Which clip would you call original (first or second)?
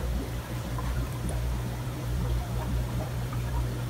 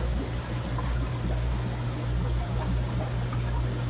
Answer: second